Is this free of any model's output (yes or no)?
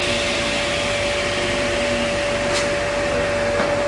yes